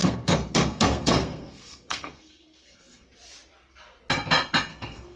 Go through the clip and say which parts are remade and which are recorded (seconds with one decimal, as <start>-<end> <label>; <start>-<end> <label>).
0.0-3.1 remade; 3.1-4.7 recorded; 4.7-5.2 remade